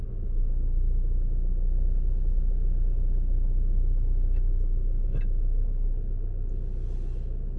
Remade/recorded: recorded